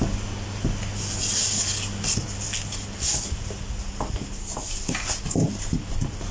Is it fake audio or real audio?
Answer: real